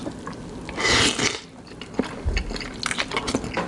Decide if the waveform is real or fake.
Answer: real